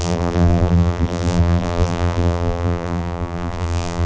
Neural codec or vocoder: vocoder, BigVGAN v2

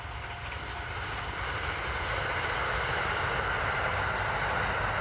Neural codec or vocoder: none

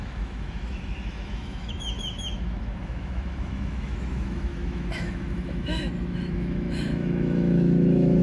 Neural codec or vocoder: autoencoder, DAC-VAE